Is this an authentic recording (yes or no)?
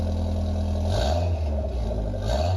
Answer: yes